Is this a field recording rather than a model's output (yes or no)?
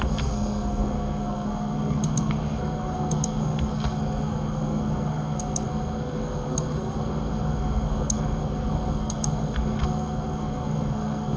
no